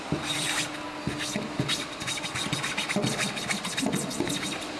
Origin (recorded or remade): recorded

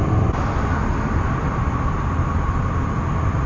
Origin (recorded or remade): recorded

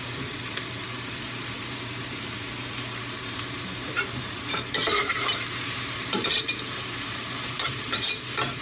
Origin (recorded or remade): remade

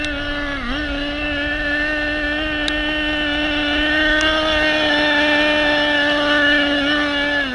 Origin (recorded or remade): recorded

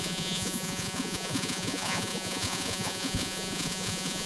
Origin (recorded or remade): remade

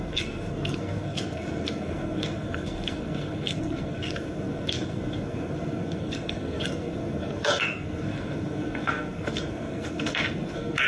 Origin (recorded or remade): remade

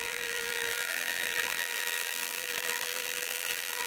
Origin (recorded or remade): remade